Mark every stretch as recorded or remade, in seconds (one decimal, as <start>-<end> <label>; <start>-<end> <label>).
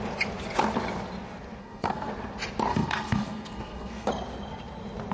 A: 0.0-1.6 recorded; 1.6-2.1 remade; 2.1-2.7 recorded; 2.7-4.1 remade; 4.1-5.1 recorded